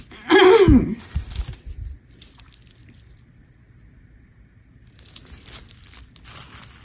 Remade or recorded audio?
recorded